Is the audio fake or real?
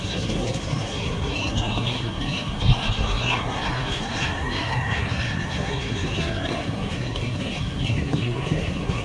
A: fake